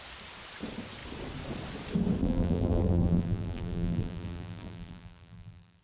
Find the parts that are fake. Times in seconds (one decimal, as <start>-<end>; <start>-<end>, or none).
2.2-5.8